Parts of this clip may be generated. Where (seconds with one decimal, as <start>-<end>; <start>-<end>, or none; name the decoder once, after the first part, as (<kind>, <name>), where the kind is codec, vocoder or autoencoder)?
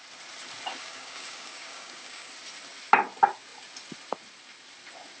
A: 0.8-2.3 (codec, DAC)